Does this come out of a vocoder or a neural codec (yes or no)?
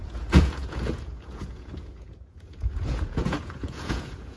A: yes